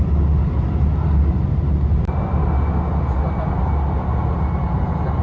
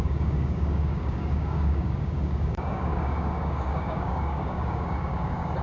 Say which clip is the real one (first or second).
first